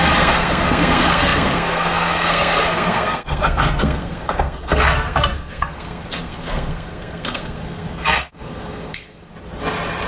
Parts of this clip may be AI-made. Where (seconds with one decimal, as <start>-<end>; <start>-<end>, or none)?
0.0-9.3